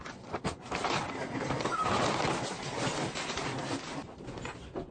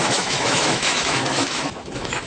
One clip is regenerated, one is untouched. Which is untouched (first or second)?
first